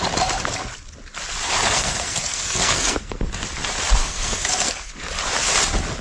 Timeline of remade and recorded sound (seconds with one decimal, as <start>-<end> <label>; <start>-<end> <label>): 0.0-1.6 recorded; 1.6-3.4 remade; 3.4-4.0 recorded; 4.0-5.1 remade; 5.1-6.0 recorded